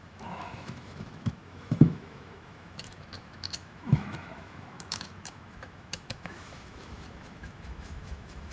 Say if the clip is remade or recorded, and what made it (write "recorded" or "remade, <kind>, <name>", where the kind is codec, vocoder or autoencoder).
remade, autoencoder, DAC-VAE